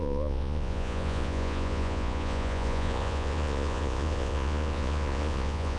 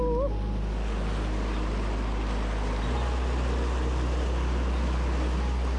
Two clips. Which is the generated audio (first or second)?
first